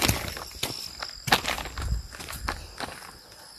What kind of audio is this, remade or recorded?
recorded